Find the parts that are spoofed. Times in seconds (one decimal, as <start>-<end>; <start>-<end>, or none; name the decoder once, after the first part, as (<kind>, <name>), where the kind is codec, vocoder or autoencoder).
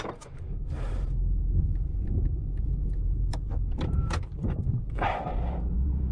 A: 0.0-6.1 (vocoder, BigVGAN v2)